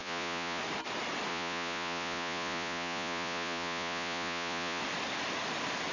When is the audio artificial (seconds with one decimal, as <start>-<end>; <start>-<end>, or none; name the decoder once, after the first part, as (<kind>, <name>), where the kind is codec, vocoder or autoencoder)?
0.0-0.6 (vocoder, Vocos); 1.3-4.8